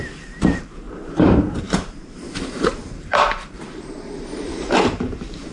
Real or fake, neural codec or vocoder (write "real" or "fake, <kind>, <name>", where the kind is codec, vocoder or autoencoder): fake, vocoder, BigVGAN v2